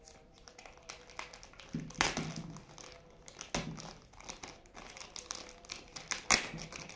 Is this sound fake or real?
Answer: real